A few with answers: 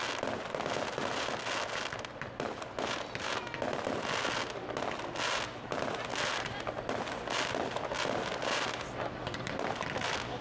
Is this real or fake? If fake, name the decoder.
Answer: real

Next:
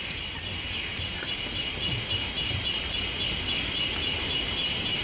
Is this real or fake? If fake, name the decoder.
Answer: real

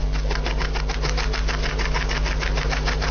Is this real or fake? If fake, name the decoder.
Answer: real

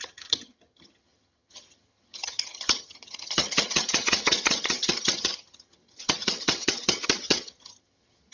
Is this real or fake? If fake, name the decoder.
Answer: fake, vocoder, HiFi-GAN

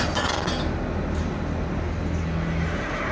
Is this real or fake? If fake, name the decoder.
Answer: real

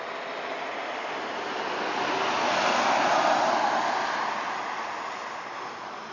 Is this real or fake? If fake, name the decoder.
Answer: real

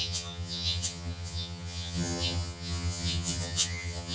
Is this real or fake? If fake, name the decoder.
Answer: fake, vocoder, HiFi-GAN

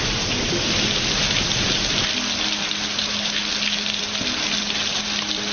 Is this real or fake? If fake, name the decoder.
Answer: real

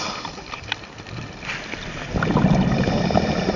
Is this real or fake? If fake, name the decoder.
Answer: real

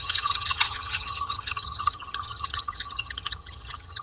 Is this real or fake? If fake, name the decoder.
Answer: fake, vocoder, HiFi-GAN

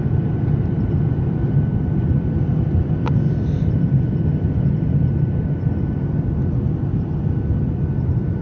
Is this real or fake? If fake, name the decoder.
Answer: real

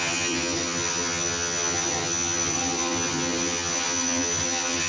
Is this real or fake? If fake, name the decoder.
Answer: fake, vocoder, HiFi-GAN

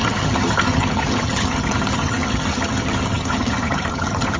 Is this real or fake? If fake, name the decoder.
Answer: fake, vocoder, HiFi-GAN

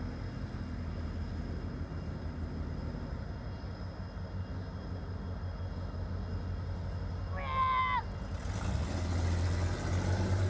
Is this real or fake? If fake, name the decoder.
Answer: real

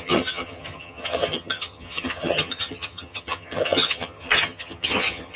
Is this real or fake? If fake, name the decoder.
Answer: fake, vocoder, HiFi-GAN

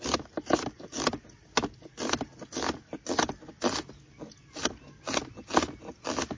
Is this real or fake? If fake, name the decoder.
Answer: real